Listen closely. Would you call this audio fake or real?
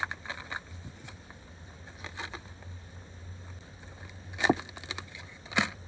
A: real